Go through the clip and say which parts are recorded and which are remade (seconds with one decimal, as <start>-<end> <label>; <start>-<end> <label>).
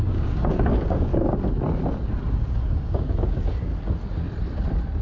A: 0.0-1.1 remade; 1.1-2.3 recorded; 2.3-3.7 remade; 3.7-5.0 recorded